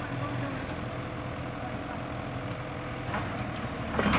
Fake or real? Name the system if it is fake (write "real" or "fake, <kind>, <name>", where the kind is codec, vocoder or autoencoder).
real